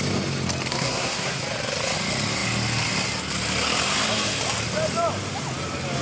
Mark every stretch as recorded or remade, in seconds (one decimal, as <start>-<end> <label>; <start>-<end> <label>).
0.0-0.7 recorded; 0.7-1.4 remade; 1.4-6.0 recorded